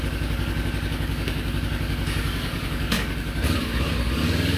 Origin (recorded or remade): remade